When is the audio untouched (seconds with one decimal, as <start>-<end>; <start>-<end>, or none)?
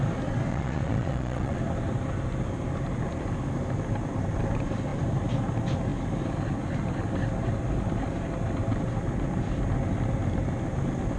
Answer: 0.0-0.5; 1.6-11.2